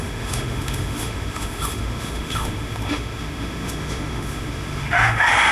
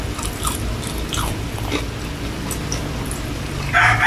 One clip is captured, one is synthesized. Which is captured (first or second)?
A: second